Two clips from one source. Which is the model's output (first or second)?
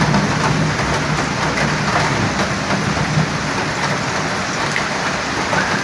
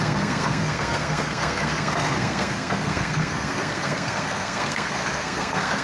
second